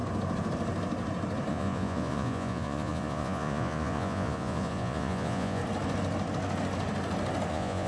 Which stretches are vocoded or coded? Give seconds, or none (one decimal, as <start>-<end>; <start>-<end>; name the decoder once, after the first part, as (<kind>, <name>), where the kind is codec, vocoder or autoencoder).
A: 1.5-5.6 (vocoder, Vocos); 7.5-7.9